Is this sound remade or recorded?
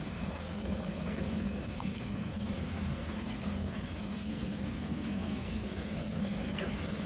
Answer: remade